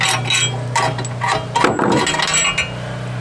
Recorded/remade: recorded